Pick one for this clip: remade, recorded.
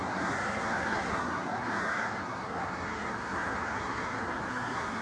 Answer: remade